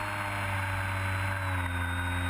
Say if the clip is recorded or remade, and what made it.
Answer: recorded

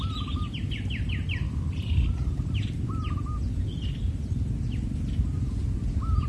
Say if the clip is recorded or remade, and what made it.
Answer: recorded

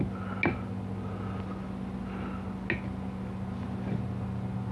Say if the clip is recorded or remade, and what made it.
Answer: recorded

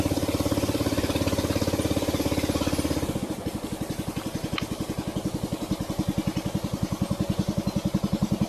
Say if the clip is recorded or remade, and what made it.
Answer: recorded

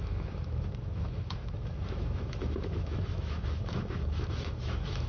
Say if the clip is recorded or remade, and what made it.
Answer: remade, autoencoder, DAC-VAE